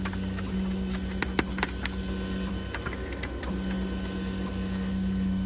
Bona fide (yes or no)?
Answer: yes